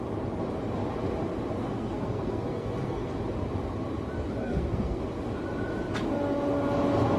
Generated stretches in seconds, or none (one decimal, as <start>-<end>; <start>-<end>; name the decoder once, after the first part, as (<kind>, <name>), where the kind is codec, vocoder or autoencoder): 1.6-3.1 (codec, SNAC); 4.4-5.0